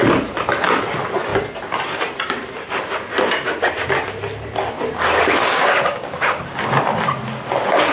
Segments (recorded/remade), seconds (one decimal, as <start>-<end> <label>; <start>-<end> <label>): 0.0-5.4 recorded; 5.4-6.8 remade; 6.8-7.9 recorded

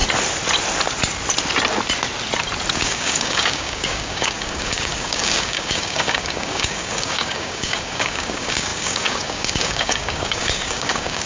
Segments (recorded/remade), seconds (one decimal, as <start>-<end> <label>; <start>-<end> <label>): 0.0-2.7 recorded; 2.7-11.3 remade

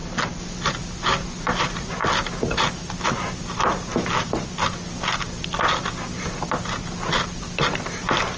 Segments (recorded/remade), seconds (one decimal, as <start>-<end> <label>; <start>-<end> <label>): 0.0-8.4 recorded

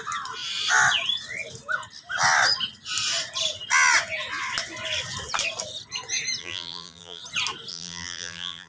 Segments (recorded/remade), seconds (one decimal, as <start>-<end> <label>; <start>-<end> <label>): 0.0-6.4 recorded; 6.4-7.2 remade; 7.2-7.7 recorded; 7.7-8.7 remade

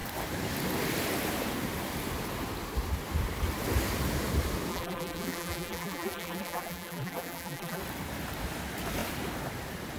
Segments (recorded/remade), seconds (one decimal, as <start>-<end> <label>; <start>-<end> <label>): 0.0-4.7 recorded; 4.7-7.8 remade; 7.8-10.0 recorded

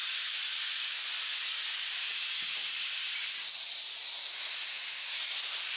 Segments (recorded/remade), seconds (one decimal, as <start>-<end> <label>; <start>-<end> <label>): 0.0-2.5 recorded; 2.5-5.8 remade

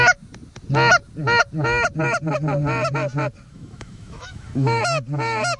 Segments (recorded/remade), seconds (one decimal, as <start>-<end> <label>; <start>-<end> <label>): 0.0-3.5 recorded; 3.5-4.8 remade; 4.8-5.6 recorded

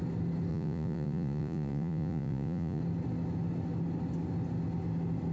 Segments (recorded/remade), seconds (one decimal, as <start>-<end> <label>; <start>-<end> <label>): 0.0-0.5 recorded; 0.5-2.8 remade; 2.8-5.3 recorded